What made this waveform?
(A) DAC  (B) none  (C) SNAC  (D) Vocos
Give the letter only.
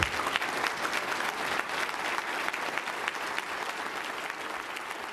B